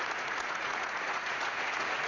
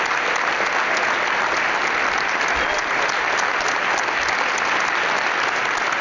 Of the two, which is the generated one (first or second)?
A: first